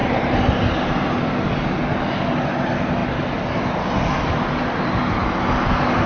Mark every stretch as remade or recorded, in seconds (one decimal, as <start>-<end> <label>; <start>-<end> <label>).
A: 0.0-6.1 recorded